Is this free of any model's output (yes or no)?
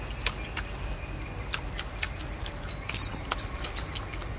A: yes